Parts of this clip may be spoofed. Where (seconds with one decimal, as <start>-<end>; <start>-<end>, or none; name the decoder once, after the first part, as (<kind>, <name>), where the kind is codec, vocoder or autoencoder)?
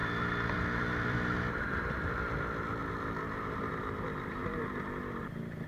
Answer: 0.0-2.8 (vocoder, BigVGAN v2); 3.7-4.4